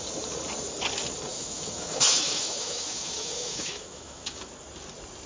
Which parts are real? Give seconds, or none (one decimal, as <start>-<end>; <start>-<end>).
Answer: 0.0-1.3; 4.5-5.3